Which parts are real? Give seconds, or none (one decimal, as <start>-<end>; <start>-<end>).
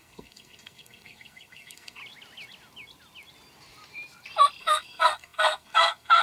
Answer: 2.0-4.6